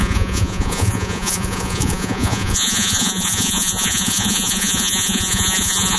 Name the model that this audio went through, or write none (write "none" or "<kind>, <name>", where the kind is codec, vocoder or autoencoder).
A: vocoder, Vocos